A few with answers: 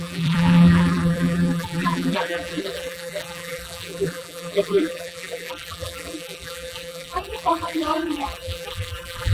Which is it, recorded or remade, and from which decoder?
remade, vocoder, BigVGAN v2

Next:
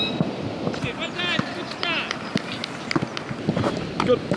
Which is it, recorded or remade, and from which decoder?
recorded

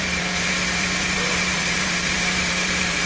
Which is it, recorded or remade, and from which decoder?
remade, vocoder, BigVGAN v2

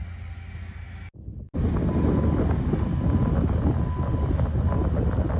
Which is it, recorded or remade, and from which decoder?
recorded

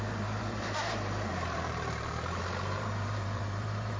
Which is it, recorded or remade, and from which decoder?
remade, vocoder, BigVGAN v2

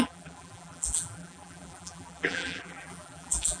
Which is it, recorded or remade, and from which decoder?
remade, vocoder, BigVGAN v2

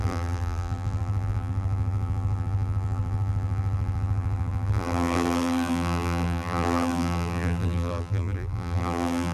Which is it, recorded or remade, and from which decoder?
remade, vocoder, BigVGAN v2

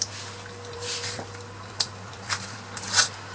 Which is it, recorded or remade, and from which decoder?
remade, vocoder, BigVGAN v2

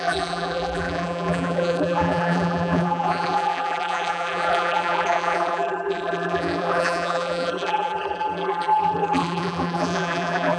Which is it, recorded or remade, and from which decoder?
remade, vocoder, BigVGAN v2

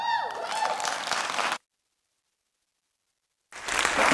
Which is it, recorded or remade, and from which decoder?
recorded